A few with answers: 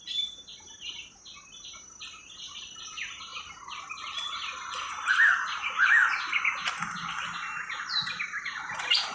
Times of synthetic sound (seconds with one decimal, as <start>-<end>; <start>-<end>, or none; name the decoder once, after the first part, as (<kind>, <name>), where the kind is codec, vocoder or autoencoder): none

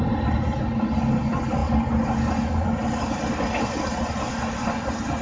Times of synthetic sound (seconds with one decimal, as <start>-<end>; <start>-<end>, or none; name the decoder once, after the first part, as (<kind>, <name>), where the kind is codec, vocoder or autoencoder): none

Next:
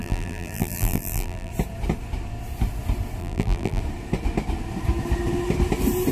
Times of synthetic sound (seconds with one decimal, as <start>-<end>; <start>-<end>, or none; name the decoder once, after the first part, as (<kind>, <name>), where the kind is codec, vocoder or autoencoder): 0.0-1.5 (vocoder, BigVGAN v2); 3.2-3.8